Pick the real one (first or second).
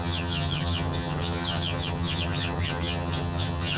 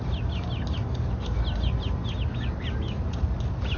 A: second